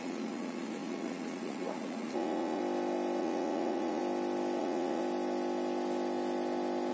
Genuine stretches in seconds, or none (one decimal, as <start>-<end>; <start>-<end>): 2.6-3.2; 4.0-4.6; 5.0-6.9